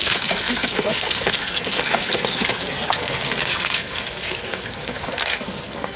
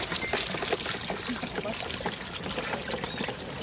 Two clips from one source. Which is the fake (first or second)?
first